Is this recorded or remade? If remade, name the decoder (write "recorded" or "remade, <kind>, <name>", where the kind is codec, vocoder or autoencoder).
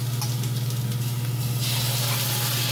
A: recorded